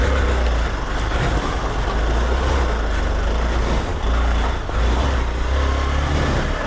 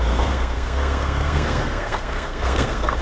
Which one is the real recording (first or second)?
first